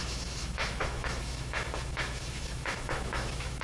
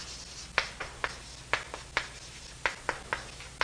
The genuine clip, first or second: second